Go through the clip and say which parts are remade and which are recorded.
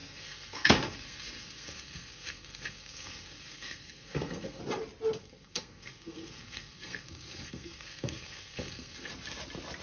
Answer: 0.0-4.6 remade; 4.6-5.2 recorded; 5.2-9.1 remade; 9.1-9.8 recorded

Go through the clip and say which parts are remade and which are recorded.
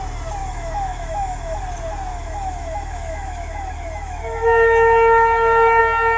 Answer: 0.0-0.4 recorded; 0.4-1.6 remade; 1.6-2.1 recorded; 2.1-5.8 remade; 5.8-6.2 recorded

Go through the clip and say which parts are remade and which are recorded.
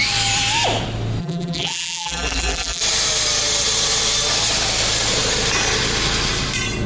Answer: 0.0-1.2 recorded; 1.2-2.8 remade; 2.8-6.9 recorded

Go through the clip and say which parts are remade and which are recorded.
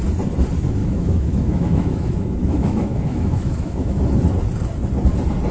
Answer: 0.0-0.8 recorded; 0.8-4.0 remade; 4.0-5.5 recorded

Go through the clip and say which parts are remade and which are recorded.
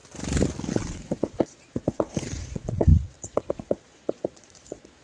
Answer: 0.0-0.7 recorded; 0.7-5.0 remade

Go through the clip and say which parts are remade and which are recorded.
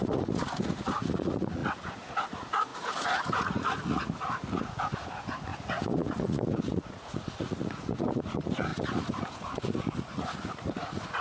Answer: 0.0-11.2 remade